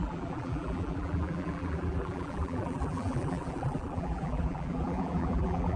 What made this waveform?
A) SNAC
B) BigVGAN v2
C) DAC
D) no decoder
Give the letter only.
B